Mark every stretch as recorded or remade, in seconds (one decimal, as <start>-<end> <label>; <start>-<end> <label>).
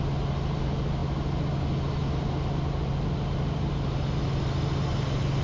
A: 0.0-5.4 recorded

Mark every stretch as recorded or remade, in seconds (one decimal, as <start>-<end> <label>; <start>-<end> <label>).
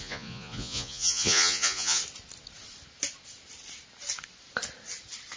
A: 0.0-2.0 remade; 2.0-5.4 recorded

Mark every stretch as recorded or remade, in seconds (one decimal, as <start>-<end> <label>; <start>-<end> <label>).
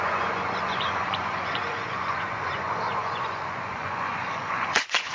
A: 0.0-5.1 remade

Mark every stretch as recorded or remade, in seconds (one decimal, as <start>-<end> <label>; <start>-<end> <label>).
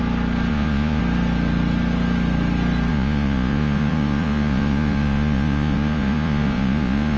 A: 0.0-0.5 recorded; 0.5-1.0 remade; 1.0-2.9 recorded; 2.9-7.2 remade